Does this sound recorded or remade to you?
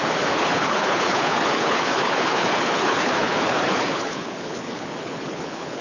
remade